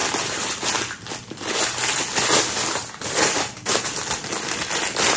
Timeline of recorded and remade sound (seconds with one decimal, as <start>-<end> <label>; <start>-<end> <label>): 0.0-3.1 recorded; 3.1-5.2 remade

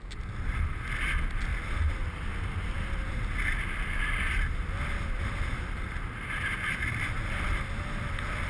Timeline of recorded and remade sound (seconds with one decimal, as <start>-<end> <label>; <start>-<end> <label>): 0.0-8.5 recorded

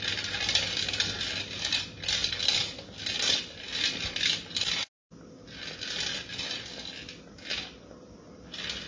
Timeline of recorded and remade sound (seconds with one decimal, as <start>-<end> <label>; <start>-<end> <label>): 0.0-8.9 recorded

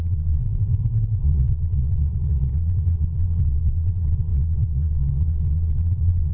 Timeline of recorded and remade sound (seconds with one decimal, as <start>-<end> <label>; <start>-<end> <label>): 0.0-0.4 remade; 0.4-1.2 recorded; 1.2-6.3 remade

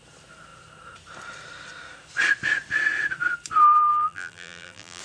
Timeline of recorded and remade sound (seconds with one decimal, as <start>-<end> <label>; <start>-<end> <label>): 0.0-3.9 recorded; 3.9-5.0 remade